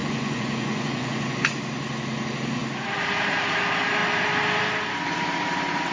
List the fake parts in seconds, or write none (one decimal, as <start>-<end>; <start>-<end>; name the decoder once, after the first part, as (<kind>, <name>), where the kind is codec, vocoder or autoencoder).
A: 0.0-1.5 (vocoder, Vocos)